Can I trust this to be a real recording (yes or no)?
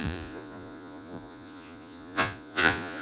no